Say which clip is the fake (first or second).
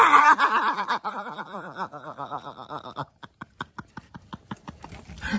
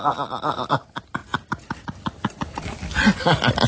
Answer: first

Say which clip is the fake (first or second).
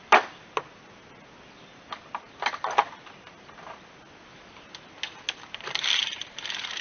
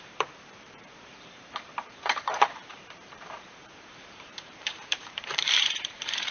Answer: second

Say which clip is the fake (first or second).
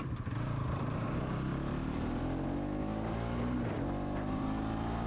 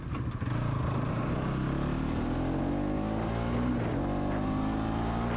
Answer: first